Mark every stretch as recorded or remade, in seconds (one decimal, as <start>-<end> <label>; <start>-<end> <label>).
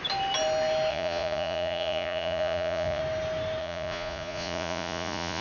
0.0-0.9 recorded; 0.9-3.0 remade; 3.0-3.6 recorded; 3.6-5.4 remade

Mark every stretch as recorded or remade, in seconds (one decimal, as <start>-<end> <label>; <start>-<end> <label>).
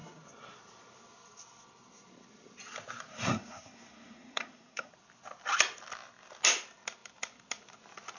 0.0-3.1 recorded; 3.1-4.9 remade; 4.9-8.2 recorded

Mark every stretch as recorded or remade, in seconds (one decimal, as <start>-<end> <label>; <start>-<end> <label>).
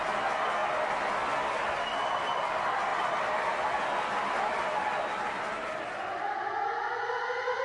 0.0-0.6 remade; 0.6-2.1 recorded; 2.1-7.6 remade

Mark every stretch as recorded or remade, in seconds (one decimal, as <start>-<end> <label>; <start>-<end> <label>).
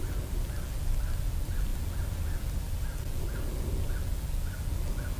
0.0-5.2 recorded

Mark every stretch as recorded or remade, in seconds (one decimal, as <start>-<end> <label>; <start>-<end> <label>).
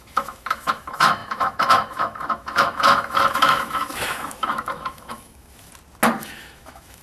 0.0-5.7 remade; 5.7-6.2 recorded; 6.2-7.0 remade